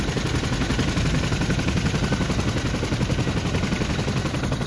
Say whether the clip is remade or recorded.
recorded